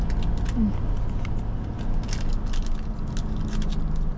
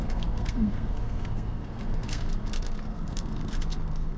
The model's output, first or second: second